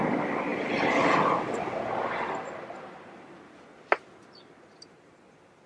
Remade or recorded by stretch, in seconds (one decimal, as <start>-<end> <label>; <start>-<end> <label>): 0.0-5.7 recorded